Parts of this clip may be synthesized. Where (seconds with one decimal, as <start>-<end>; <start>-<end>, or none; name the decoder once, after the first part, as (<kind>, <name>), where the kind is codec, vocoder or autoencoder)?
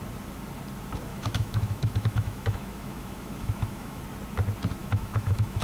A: 1.1-4.0 (autoencoder, DAC-VAE); 4.8-5.6